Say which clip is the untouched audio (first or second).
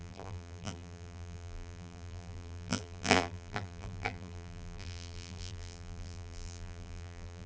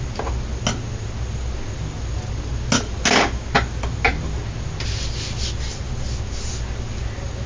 second